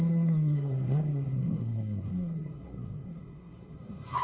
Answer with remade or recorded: remade